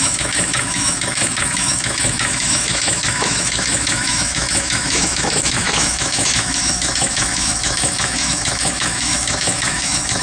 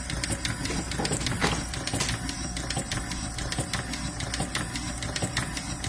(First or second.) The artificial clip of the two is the first